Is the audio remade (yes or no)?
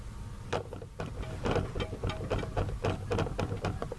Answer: no